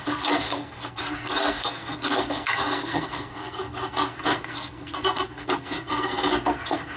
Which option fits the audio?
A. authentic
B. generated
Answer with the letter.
B